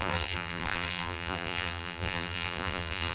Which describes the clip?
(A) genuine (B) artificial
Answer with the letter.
B